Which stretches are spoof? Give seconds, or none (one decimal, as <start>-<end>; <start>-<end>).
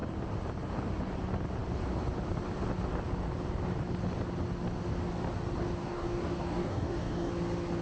5.8-7.3